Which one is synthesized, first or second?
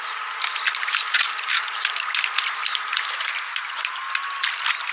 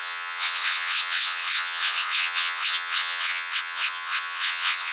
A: second